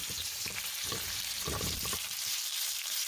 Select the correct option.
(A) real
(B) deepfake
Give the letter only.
B